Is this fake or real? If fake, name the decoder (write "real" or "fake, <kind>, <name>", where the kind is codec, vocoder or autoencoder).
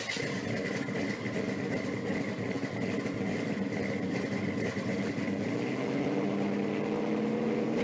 real